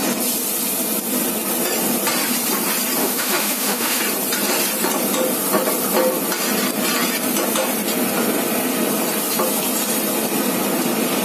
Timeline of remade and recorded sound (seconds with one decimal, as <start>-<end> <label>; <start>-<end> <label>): 0.0-3.0 recorded; 3.0-4.0 remade; 4.0-11.2 recorded